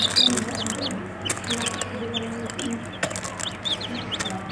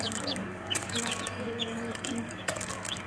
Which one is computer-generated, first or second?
second